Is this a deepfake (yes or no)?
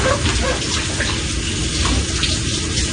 no